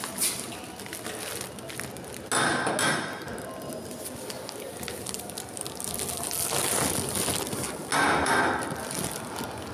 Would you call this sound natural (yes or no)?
yes